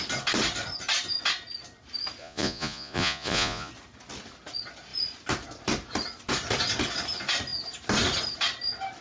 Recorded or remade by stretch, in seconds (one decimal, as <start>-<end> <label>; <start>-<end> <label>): 0.0-2.2 recorded; 2.2-3.7 remade; 3.7-9.0 recorded